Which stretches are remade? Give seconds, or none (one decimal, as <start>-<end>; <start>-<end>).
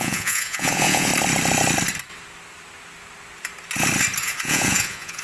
0.0-1.1; 4.2-5.2